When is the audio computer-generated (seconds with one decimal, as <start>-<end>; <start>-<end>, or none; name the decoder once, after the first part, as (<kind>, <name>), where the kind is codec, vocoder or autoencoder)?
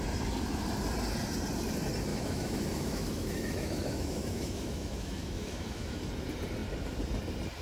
2.1-6.0 (autoencoder, DAC-VAE)